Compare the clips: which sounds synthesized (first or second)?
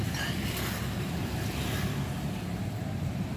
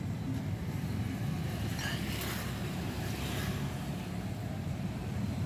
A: first